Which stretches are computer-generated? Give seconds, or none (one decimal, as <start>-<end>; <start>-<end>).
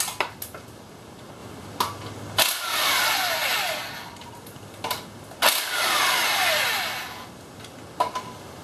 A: none